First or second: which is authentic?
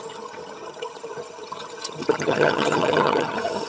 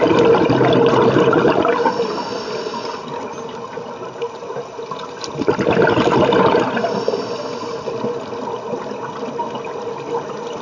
second